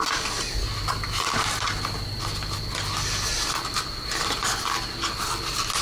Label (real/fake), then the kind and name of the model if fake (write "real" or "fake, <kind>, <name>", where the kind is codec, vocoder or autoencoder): real